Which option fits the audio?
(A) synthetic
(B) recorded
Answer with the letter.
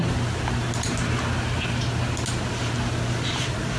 B